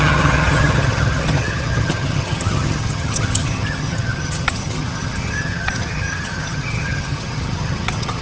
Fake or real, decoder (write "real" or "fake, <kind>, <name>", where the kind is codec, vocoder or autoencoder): fake, vocoder, HiFi-GAN